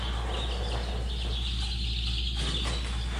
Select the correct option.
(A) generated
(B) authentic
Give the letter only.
B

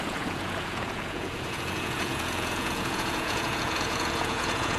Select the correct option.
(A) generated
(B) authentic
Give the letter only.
A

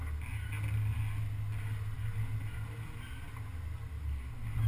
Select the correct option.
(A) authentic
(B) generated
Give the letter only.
A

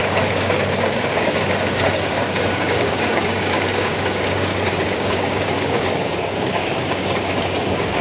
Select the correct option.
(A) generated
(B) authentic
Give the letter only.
A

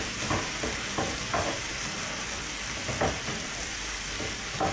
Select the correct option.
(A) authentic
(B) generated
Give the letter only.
A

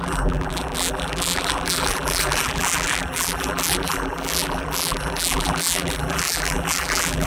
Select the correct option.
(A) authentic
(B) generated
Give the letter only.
B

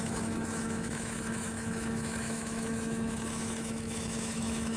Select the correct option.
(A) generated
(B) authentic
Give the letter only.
A